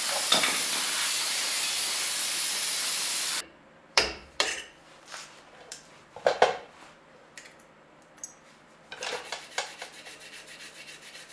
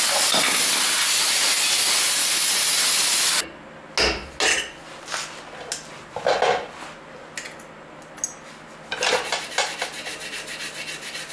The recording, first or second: second